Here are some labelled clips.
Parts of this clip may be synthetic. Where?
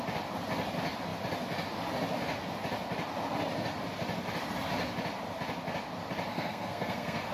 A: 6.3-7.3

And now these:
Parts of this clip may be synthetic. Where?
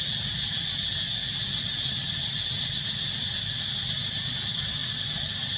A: none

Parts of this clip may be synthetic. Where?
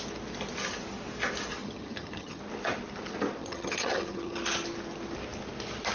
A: 1.6-2.4; 3.4-4.4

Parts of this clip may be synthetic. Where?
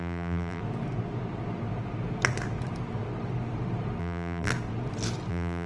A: 0.0-0.6; 4.0-4.5; 5.3-5.7